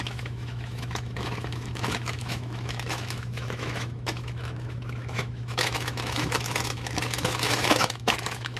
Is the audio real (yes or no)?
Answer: no